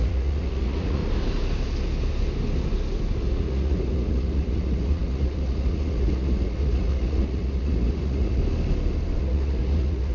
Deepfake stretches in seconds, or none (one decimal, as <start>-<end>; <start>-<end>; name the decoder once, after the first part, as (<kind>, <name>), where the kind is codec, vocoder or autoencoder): 0.0-1.0 (vocoder, Vocos); 3.2-8.4; 9.2-10.1